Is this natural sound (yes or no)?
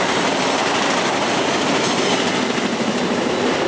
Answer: yes